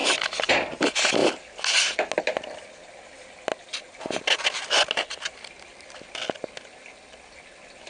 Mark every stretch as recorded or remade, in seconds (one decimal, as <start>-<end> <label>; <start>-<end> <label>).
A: 0.0-7.9 recorded